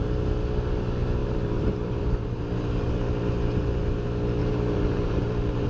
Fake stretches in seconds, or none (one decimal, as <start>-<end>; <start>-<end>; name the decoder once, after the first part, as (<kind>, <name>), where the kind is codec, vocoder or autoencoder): 1.2-3.8 (vocoder, BigVGAN v2); 4.4-5.7